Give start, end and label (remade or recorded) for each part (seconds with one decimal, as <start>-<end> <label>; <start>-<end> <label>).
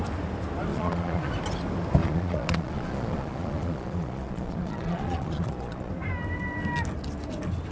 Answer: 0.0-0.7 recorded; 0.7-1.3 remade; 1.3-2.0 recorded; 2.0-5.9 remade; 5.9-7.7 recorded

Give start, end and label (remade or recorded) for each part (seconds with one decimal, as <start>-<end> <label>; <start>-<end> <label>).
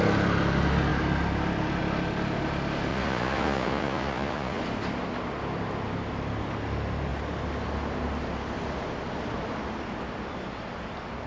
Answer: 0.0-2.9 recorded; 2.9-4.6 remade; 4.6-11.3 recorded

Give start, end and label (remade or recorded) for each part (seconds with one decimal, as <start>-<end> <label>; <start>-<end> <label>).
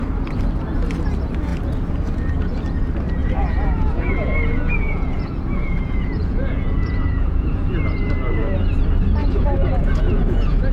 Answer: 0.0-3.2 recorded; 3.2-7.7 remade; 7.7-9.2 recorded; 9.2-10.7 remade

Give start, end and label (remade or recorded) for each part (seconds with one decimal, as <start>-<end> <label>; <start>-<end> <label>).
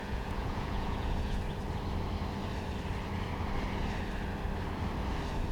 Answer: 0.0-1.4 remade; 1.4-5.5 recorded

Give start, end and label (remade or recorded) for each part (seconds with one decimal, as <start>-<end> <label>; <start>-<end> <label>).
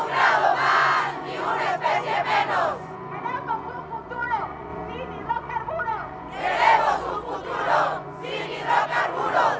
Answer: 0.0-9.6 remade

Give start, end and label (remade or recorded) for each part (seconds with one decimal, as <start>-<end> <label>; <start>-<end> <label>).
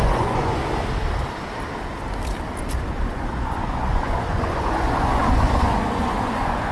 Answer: 0.0-0.6 remade; 0.6-3.0 recorded; 3.0-6.7 remade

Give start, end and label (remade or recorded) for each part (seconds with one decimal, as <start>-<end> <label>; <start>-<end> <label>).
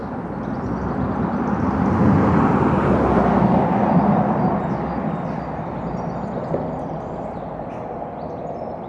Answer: 0.0-8.9 recorded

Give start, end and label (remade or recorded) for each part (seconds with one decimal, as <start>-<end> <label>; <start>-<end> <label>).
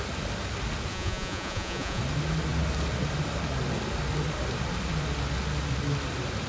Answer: 0.0-0.9 recorded; 0.9-2.0 remade; 2.0-6.5 recorded